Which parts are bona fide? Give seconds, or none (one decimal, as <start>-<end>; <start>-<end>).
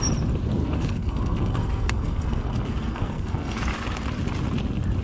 0.0-0.6; 3.6-5.0